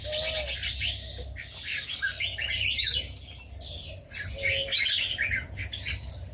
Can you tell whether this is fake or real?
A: real